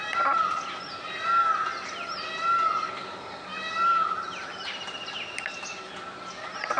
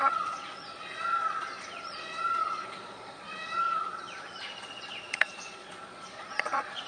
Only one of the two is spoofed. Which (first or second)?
second